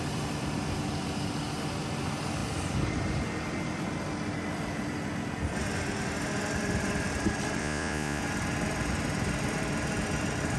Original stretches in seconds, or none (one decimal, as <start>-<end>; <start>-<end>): 0.0-7.6; 8.2-10.6